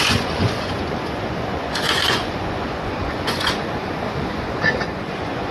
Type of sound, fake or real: fake